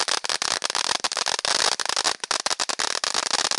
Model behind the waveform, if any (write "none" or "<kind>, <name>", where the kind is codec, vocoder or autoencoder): none